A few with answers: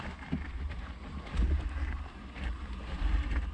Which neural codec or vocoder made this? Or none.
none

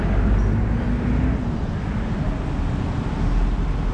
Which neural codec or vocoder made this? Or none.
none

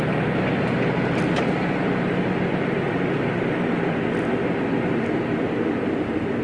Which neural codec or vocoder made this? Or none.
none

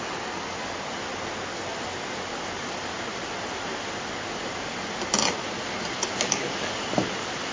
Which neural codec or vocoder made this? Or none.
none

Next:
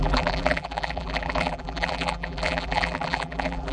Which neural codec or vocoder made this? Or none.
vocoder, BigVGAN v2